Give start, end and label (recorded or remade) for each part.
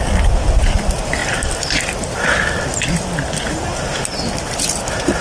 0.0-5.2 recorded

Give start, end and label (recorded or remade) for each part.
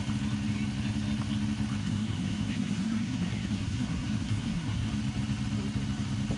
0.0-1.8 recorded; 1.8-4.9 remade; 4.9-6.4 recorded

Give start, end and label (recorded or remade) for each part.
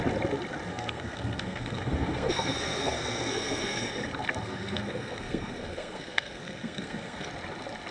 0.0-0.7 recorded; 0.7-3.9 remade; 3.9-4.4 recorded; 4.4-7.3 remade; 7.3-7.9 recorded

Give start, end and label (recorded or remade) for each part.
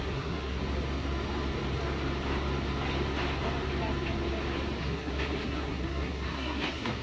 0.0-0.6 remade; 0.6-4.8 recorded; 4.8-7.0 remade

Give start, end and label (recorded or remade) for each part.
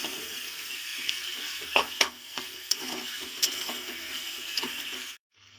0.0-5.6 remade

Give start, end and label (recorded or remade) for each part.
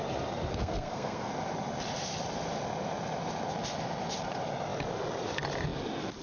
0.0-0.5 recorded; 0.5-1.3 remade; 1.3-6.2 recorded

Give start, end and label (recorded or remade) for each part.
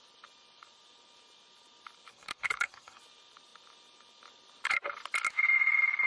0.0-2.1 recorded; 2.1-3.0 remade; 3.0-6.1 recorded